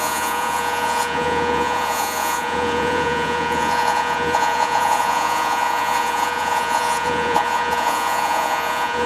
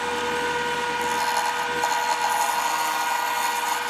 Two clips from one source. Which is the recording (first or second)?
second